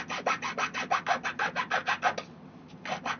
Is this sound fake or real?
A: real